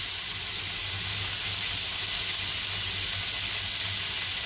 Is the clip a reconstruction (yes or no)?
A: no